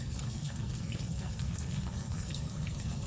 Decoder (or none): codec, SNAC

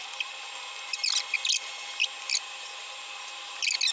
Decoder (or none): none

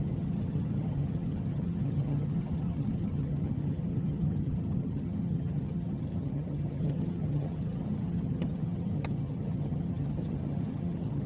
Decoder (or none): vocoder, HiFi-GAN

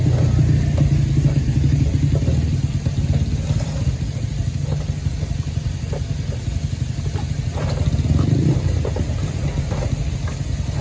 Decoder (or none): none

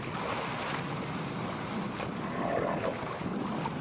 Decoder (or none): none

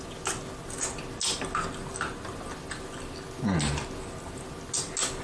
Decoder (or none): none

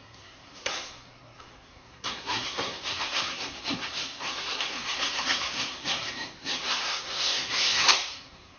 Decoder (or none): codec, SNAC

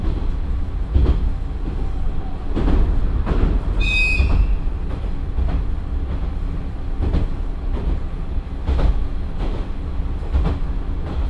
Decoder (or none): none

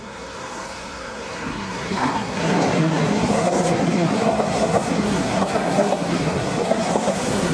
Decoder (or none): codec, SNAC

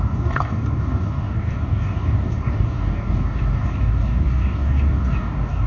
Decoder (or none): codec, DAC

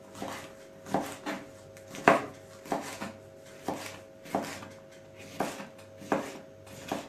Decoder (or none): none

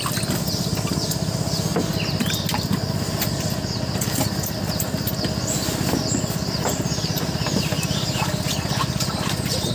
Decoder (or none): none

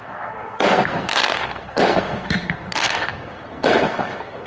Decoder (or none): codec, SNAC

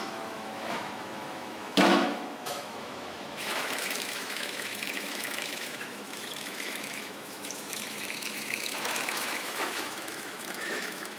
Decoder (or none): autoencoder, DAC-VAE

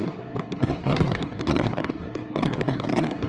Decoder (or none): codec, SNAC